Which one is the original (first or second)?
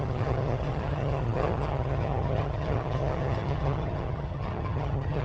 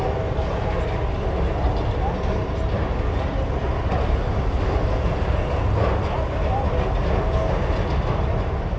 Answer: second